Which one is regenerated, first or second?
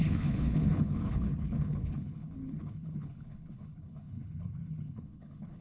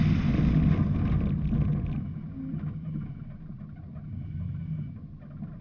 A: first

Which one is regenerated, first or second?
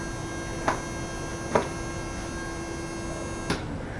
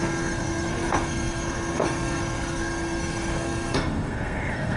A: second